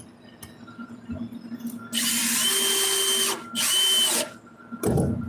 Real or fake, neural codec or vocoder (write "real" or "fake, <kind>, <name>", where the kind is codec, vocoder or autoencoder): real